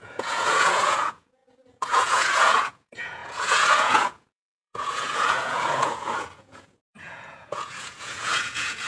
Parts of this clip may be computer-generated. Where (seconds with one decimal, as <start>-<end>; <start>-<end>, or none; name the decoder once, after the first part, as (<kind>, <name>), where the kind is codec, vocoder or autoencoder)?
0.0-8.9 (vocoder, Vocos)